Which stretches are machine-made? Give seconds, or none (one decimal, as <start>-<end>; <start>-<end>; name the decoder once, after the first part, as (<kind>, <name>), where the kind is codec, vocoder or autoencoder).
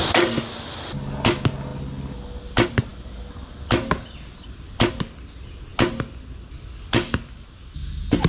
none